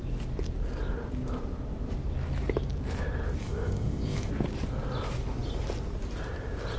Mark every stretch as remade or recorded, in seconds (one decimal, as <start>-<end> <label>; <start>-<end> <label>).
0.0-3.4 recorded; 3.4-4.3 remade; 4.3-6.8 recorded